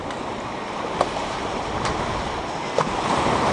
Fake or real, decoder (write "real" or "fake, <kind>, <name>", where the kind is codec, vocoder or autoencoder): real